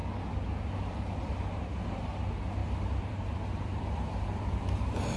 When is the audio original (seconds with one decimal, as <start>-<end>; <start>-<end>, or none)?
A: 0.0-2.6